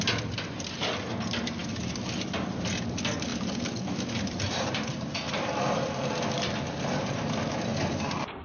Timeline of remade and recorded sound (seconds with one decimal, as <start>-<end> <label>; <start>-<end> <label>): 0.0-3.3 recorded; 3.3-6.1 remade; 6.1-7.7 recorded; 7.7-8.4 remade